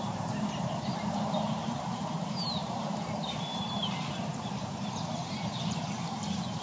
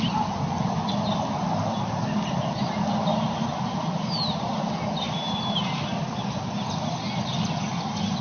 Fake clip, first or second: first